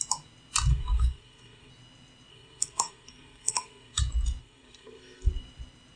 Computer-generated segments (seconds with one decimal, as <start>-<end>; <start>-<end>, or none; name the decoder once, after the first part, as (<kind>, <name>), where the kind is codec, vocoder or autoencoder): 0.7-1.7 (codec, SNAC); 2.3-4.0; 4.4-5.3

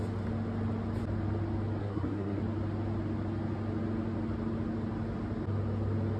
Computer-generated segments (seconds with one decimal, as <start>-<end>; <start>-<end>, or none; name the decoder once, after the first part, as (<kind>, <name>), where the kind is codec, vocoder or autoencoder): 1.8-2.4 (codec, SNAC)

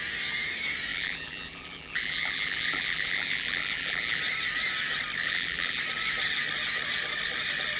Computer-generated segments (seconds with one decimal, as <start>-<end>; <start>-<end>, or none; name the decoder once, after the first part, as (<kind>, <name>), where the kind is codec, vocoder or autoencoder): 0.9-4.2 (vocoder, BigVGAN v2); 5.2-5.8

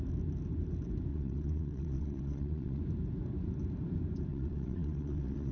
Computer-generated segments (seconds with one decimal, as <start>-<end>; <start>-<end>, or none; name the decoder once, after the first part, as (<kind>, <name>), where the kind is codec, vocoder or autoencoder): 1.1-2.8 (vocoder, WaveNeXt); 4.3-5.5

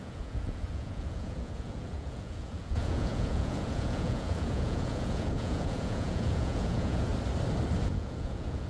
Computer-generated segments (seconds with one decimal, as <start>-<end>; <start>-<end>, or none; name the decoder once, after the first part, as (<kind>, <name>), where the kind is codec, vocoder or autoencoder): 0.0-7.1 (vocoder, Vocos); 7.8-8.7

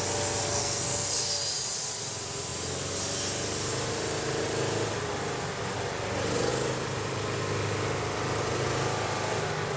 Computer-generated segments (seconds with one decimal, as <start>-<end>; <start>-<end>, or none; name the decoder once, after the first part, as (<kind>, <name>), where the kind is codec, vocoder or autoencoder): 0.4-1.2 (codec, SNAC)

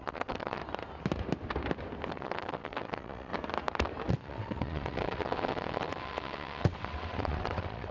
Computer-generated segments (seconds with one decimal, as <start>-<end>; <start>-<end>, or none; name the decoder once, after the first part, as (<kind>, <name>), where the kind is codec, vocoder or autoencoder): 0.0-0.6 (vocoder, WaveNeXt); 2.1-3.3; 4.1-7.9